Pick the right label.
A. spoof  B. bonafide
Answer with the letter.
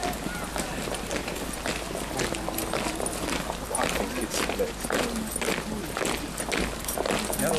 B